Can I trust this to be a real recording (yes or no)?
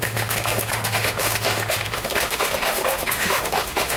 no